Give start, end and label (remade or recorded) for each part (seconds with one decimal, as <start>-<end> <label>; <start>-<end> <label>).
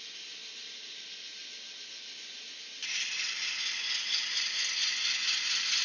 0.0-5.8 recorded